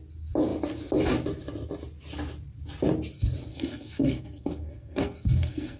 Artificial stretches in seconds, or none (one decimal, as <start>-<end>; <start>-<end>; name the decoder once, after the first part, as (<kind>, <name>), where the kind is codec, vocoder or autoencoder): 3.5-5.8 (codec, SNAC)